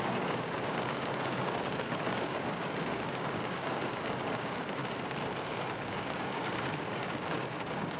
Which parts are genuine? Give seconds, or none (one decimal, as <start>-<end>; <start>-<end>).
4.8-5.4